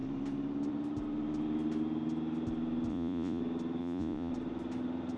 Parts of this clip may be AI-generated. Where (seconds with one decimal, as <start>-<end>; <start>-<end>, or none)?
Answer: 2.9-3.4; 3.8-4.3